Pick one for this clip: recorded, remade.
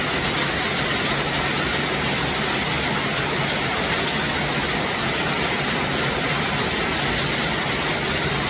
recorded